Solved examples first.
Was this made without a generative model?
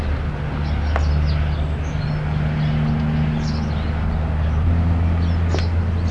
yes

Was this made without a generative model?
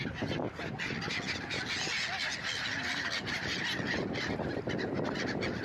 yes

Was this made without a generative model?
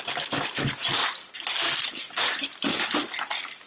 yes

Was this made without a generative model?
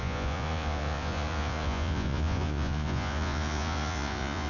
no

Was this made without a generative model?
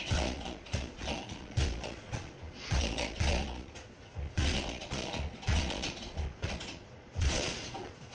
no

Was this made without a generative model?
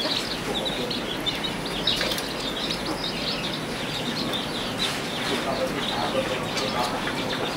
yes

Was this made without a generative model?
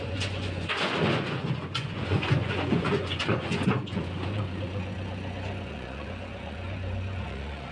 no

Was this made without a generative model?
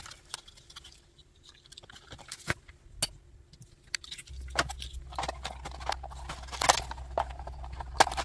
yes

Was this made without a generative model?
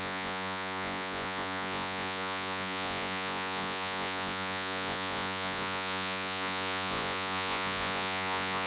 no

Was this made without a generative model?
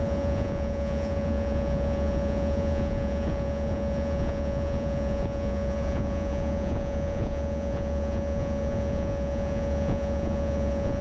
no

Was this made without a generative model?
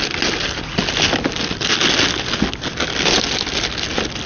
yes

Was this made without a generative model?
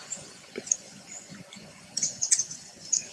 no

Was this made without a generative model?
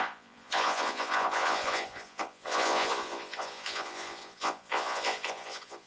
no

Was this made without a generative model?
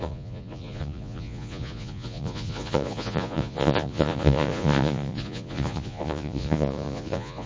no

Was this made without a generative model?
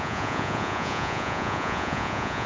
no